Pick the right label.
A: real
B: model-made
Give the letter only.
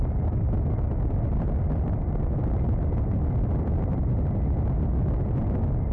A